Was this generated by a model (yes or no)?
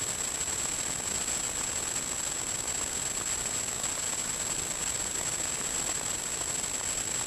no